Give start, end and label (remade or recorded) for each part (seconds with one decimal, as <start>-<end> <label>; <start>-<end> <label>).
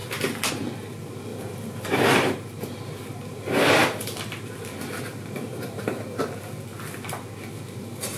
0.0-0.5 remade; 0.5-1.3 recorded; 1.3-6.2 remade; 6.2-8.2 recorded